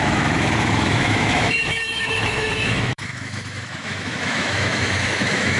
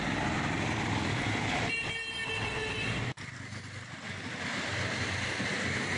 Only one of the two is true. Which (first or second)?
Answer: second